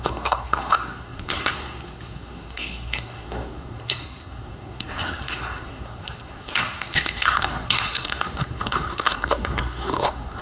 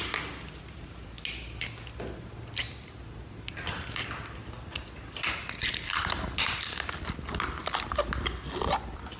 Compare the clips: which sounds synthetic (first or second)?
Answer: first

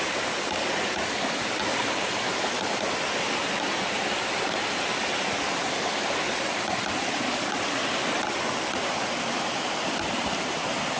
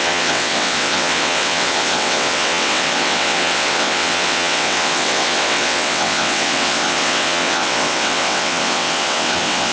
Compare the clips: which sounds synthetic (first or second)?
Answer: second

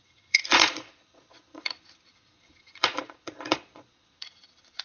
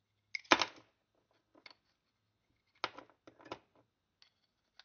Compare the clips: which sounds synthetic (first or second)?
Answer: first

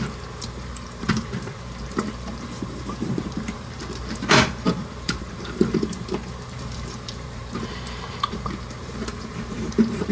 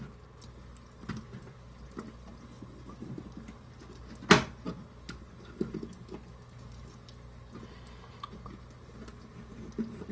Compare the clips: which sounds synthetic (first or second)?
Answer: first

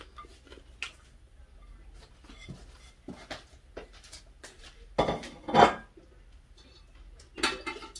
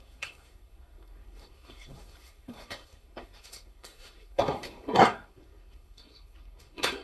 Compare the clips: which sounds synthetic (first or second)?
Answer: second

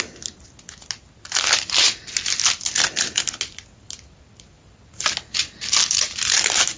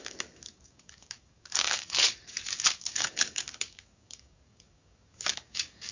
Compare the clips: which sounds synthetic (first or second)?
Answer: second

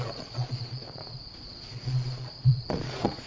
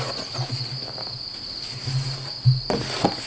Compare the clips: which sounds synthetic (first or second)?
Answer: first